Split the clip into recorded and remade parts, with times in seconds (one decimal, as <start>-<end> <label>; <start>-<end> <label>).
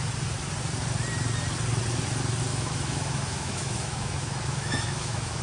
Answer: 0.0-2.5 recorded; 2.5-5.4 remade